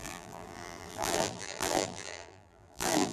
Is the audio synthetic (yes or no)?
yes